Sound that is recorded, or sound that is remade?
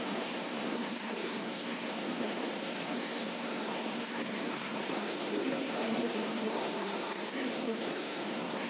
remade